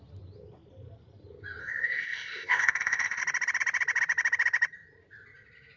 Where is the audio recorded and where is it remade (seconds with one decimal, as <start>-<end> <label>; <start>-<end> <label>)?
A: 0.0-1.6 recorded; 1.6-3.2 remade; 3.2-5.8 recorded